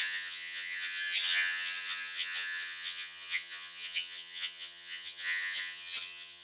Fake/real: fake